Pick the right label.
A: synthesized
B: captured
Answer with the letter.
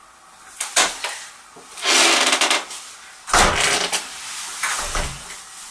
B